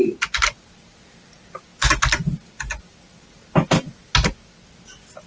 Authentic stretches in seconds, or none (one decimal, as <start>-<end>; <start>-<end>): 0.0-5.3